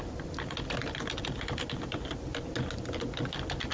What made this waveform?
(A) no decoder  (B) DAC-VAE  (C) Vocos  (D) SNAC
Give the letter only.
A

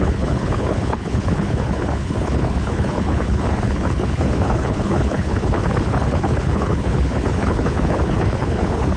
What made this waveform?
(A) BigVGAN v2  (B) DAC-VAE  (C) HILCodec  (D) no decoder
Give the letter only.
C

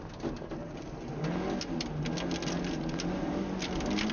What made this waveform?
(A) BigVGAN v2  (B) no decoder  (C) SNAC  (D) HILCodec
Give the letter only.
B